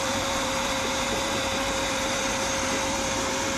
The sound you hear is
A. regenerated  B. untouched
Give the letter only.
A